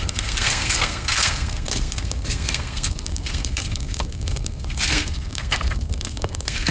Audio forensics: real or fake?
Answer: fake